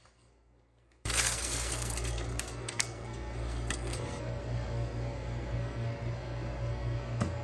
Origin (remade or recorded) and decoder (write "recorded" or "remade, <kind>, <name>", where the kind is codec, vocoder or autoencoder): remade, codec, SNAC